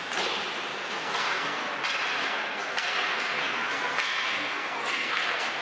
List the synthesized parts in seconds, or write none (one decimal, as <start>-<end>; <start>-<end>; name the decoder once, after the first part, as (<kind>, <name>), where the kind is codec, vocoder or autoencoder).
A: 0.7-1.7 (codec, SNAC); 2.2-5.6